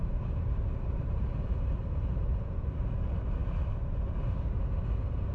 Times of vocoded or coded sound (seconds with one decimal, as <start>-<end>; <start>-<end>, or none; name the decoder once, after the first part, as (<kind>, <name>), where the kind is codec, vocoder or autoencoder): 0.0-2.8 (vocoder, BigVGAN v2)